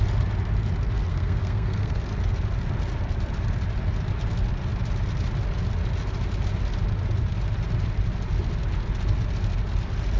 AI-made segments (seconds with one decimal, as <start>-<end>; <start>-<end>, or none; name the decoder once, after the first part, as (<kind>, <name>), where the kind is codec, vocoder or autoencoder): 1.1-2.0 (codec, SNAC)